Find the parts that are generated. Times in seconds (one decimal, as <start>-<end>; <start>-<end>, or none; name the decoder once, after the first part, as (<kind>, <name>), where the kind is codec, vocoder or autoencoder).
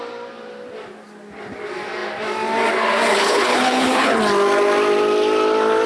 3.1-4.2 (codec, HILCodec)